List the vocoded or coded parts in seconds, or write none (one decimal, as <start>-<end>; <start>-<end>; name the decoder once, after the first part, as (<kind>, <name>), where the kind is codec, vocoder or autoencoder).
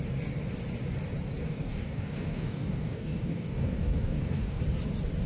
1.4-4.6 (codec, DAC)